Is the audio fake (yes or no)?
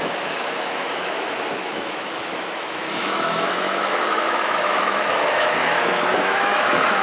yes